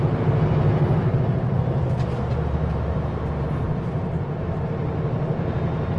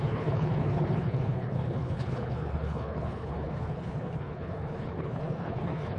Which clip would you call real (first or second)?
first